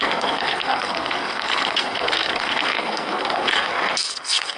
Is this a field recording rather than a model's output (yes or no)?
no